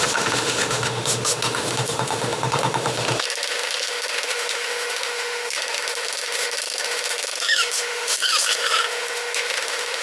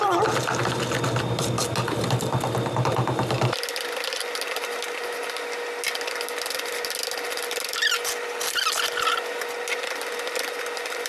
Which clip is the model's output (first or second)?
first